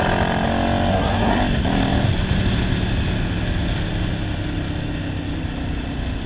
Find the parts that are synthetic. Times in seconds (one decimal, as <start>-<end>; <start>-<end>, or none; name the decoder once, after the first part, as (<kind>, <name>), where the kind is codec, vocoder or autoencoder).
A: 0.9-1.4 (codec, SNAC)